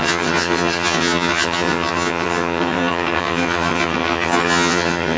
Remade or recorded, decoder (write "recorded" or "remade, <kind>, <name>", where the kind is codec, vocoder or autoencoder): remade, vocoder, HiFi-GAN